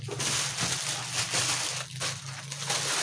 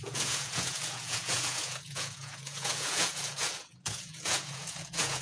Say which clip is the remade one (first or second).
second